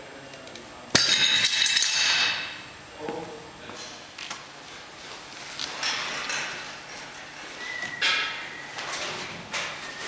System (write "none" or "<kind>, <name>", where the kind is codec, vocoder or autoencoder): none